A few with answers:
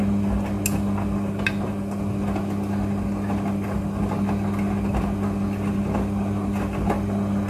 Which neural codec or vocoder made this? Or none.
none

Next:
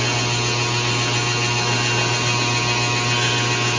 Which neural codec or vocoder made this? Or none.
none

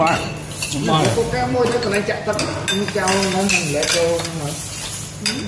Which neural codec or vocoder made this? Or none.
none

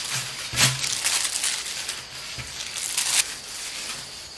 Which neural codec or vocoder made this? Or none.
none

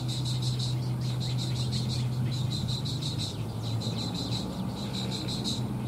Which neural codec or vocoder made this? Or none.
none